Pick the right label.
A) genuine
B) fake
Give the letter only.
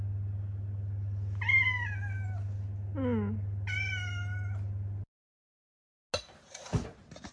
A